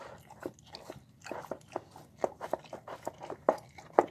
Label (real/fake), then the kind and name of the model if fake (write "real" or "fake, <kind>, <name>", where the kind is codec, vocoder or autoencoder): real